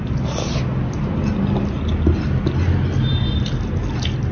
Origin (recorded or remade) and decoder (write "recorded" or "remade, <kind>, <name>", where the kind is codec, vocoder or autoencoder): recorded